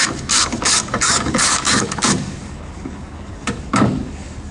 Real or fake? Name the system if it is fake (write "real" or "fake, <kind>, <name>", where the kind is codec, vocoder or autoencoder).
fake, codec, DAC